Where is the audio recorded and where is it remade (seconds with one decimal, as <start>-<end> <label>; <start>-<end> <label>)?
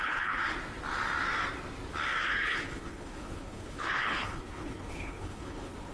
0.0-0.4 remade; 0.4-2.2 recorded; 2.2-5.9 remade